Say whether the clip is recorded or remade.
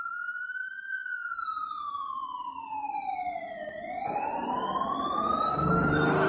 recorded